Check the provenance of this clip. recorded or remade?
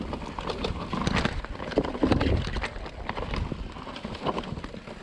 recorded